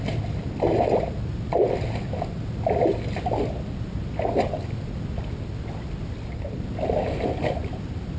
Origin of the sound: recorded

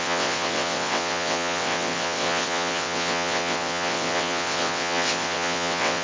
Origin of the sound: remade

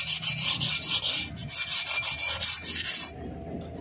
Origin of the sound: recorded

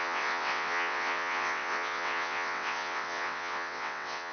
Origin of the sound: remade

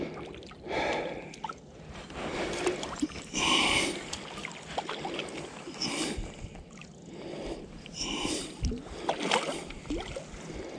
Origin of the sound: recorded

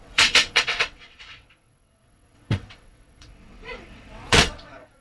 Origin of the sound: remade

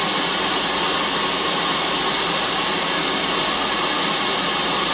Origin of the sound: recorded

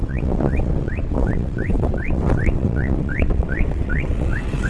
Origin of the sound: remade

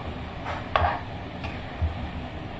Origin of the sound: recorded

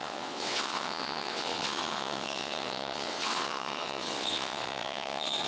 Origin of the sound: remade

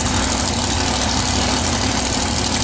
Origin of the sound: recorded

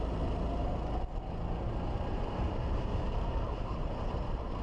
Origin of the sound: recorded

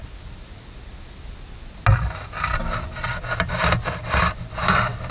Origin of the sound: recorded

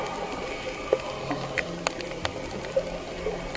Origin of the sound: recorded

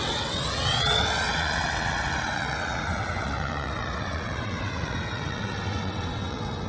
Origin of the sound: remade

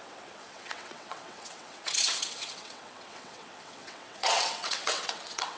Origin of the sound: remade